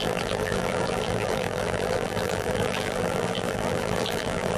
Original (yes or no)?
no